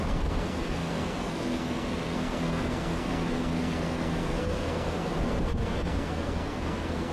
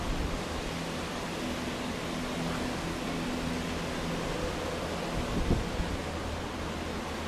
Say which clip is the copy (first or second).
first